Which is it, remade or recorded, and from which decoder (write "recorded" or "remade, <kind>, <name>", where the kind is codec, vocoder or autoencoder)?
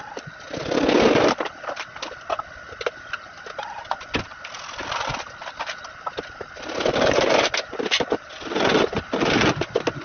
recorded